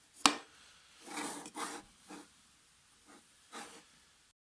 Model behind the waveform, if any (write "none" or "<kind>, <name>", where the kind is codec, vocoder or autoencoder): none